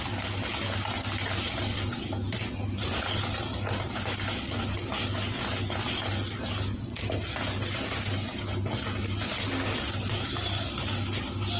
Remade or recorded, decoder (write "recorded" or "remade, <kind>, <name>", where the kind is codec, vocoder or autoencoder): recorded